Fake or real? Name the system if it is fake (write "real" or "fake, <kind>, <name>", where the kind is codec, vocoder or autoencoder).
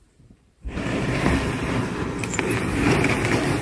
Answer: fake, vocoder, BigVGAN v2